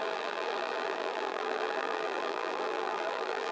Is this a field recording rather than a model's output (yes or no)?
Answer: no